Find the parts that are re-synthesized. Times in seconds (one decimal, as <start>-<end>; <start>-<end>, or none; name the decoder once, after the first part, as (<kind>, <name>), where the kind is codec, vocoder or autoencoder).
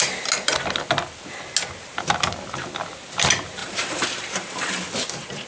3.6-4.8 (vocoder, BigVGAN v2)